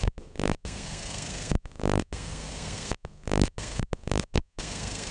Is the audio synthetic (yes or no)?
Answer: yes